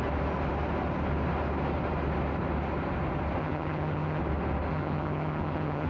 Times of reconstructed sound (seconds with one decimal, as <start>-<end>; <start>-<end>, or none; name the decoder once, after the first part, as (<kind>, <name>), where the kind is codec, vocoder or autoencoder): 3.4-4.2 (vocoder, HiFi-GAN); 4.7-5.9